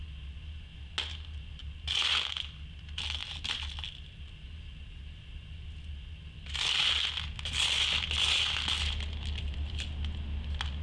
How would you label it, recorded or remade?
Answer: recorded